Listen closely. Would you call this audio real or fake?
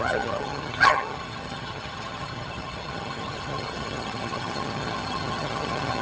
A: fake